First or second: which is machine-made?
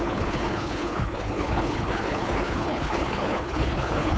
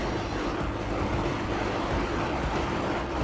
first